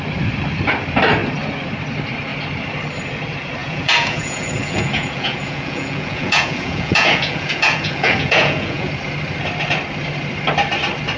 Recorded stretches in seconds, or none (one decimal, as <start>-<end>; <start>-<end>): 0.0-3.6; 8.9-11.2